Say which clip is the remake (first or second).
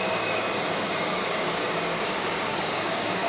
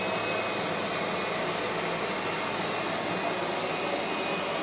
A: first